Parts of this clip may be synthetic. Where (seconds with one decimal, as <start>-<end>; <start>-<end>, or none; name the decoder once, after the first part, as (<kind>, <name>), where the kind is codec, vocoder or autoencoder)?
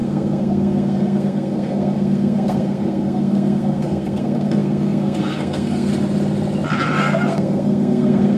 0.0-5.9 (codec, SNAC); 7.0-8.4